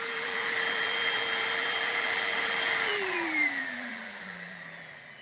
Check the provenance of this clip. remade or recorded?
remade